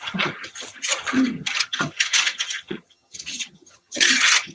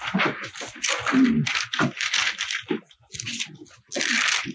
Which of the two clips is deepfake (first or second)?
first